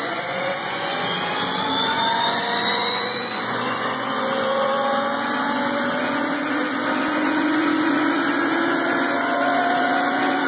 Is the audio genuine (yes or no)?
no